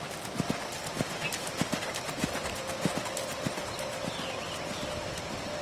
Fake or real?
real